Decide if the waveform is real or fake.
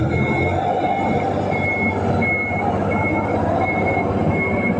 real